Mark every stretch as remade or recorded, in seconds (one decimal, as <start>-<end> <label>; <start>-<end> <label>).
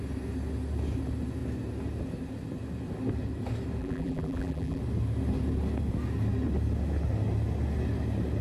0.0-3.8 recorded; 3.8-4.8 remade; 4.8-8.4 recorded